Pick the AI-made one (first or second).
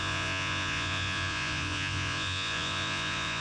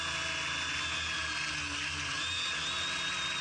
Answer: first